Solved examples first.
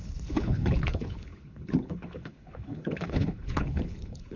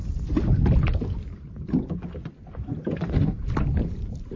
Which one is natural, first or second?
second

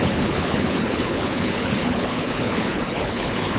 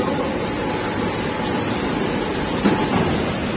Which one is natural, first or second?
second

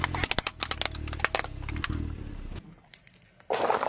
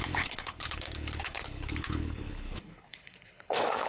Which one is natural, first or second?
first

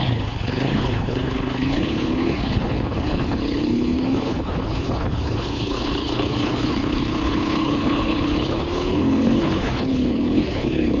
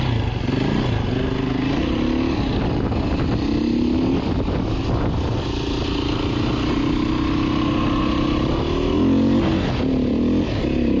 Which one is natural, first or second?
second